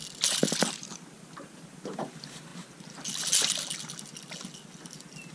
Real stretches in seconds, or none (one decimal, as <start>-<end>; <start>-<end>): 0.0-0.7; 2.5-5.3